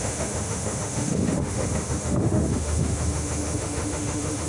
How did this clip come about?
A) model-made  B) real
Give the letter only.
A